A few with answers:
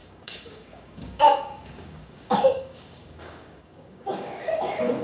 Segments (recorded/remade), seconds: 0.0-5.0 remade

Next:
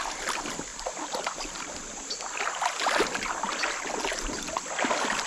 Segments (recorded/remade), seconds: 0.0-0.7 remade; 0.7-3.9 recorded; 3.9-5.3 remade

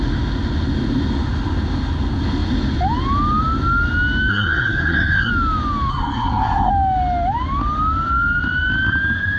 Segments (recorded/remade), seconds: 0.0-4.3 recorded; 4.3-5.3 remade; 5.3-5.9 recorded; 5.9-6.7 remade; 6.7-9.4 recorded

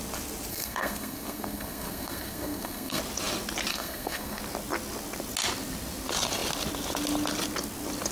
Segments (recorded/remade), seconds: 0.0-0.5 recorded; 0.5-3.0 remade; 3.0-3.7 recorded; 3.7-4.4 remade; 4.4-8.1 recorded